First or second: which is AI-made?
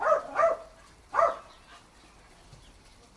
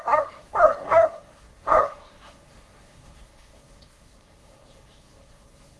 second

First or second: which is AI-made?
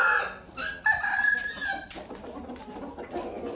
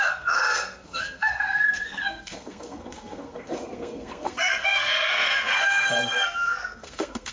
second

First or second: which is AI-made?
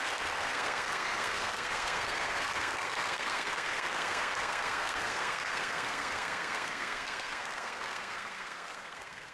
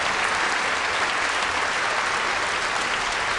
first